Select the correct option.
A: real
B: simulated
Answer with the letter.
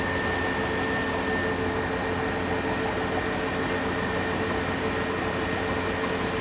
A